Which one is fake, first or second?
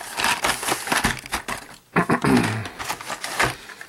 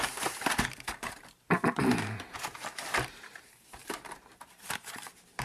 second